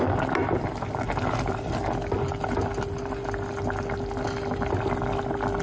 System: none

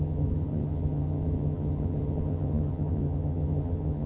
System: vocoder, HiFi-GAN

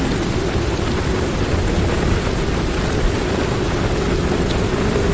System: none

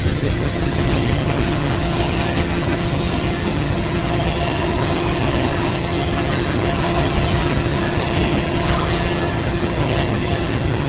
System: vocoder, HiFi-GAN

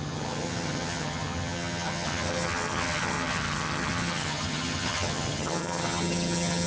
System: vocoder, HiFi-GAN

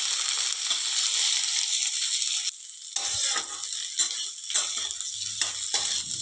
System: none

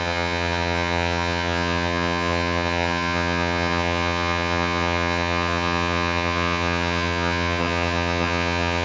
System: vocoder, HiFi-GAN